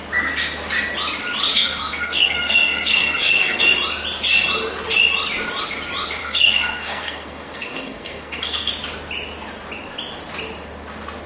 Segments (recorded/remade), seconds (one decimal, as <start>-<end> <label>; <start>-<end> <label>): 0.0-1.5 recorded; 1.5-3.6 remade; 3.6-6.2 recorded; 6.2-8.7 remade; 8.7-11.3 recorded